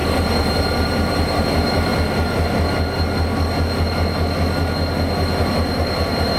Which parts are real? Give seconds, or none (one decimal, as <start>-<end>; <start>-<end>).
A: 1.9-5.4